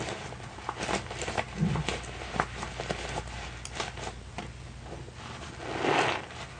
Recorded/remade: recorded